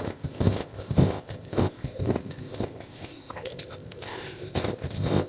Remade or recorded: remade